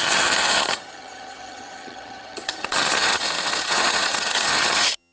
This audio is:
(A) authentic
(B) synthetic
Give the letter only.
B